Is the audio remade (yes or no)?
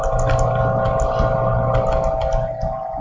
no